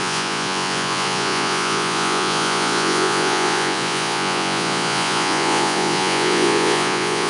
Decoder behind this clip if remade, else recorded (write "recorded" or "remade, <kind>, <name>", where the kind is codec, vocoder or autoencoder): remade, vocoder, Vocos